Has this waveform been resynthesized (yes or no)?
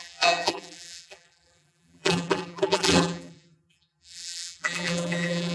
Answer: yes